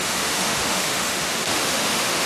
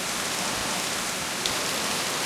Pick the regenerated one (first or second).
first